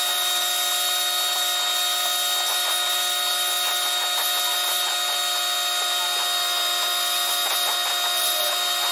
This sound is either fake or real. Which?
real